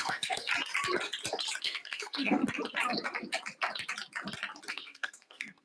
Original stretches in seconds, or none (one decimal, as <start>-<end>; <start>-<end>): 0.5-1.6; 2.4-4.7